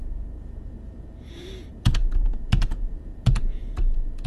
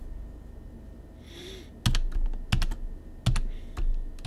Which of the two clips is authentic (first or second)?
second